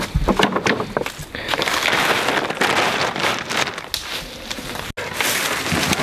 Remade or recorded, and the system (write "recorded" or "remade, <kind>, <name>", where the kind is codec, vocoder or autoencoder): recorded